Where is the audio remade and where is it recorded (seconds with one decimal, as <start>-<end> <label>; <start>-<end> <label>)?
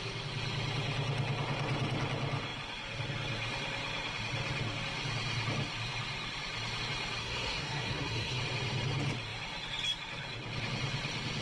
0.0-7.2 recorded; 7.2-8.4 remade; 8.4-11.4 recorded